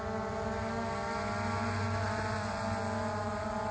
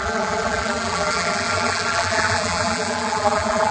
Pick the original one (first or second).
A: first